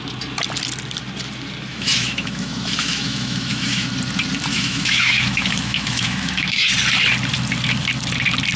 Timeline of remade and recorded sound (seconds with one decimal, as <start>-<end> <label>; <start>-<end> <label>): 0.0-1.7 recorded; 1.7-3.9 remade; 3.9-4.5 recorded; 4.5-6.7 remade; 6.7-8.6 recorded